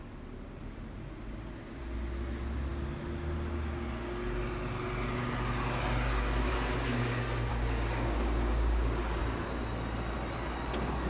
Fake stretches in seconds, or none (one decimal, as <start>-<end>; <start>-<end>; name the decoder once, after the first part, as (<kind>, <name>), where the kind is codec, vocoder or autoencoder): 7.5-9.2 (codec, DAC)